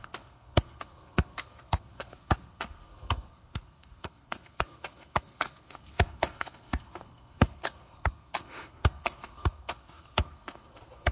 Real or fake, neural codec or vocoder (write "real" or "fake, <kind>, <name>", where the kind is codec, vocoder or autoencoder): fake, codec, SNAC